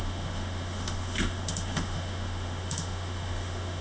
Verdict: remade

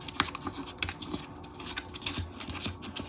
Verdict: recorded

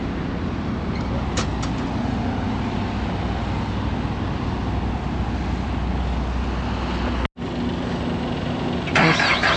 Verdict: recorded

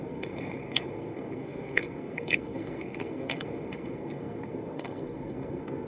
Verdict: remade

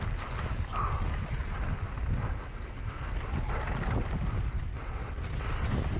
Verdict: recorded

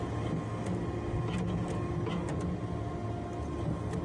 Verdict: recorded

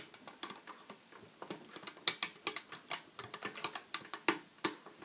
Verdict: recorded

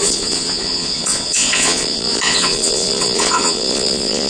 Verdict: remade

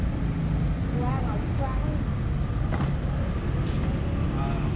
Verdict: recorded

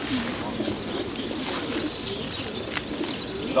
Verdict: recorded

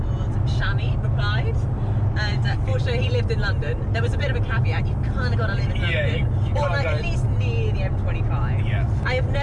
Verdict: recorded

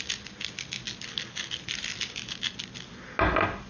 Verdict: recorded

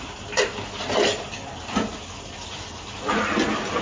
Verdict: recorded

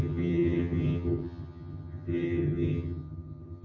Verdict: remade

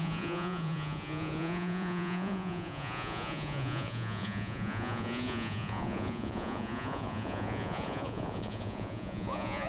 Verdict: remade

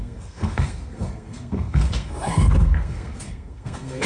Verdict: remade